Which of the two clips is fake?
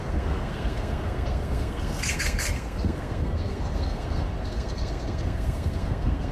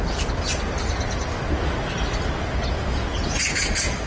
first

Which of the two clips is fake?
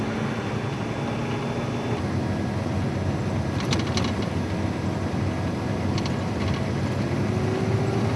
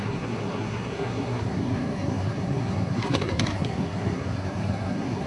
second